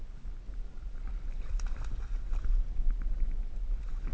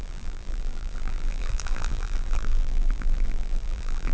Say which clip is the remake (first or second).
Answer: second